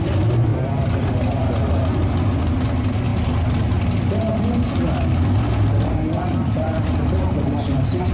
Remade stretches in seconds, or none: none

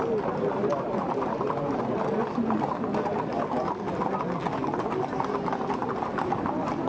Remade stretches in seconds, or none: none